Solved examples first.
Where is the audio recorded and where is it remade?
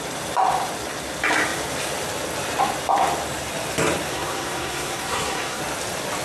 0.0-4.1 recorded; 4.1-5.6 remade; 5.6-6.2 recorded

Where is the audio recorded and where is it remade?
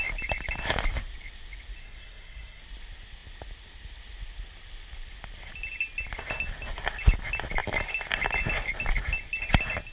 0.0-1.8 recorded; 1.8-2.6 remade; 2.6-9.9 recorded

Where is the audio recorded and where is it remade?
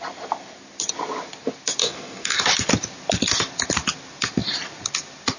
0.0-1.8 recorded; 1.8-2.4 remade; 2.4-5.4 recorded